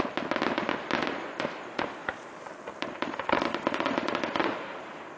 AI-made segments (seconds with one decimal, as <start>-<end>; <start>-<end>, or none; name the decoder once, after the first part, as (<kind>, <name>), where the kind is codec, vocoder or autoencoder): none